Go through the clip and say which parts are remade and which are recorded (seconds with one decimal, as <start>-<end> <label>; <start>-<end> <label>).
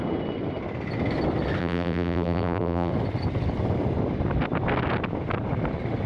0.0-1.6 recorded; 1.6-2.9 remade; 2.9-6.1 recorded